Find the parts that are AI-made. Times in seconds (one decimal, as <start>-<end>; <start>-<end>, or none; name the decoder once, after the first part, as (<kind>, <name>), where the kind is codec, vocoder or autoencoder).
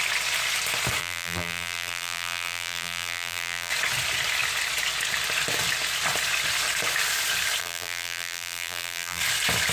1.0-3.7 (vocoder, BigVGAN v2); 7.6-9.2